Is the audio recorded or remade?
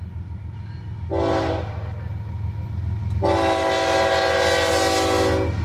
recorded